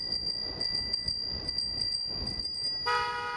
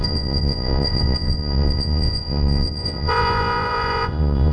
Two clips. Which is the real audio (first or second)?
first